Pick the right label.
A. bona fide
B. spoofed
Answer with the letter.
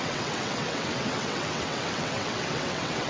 B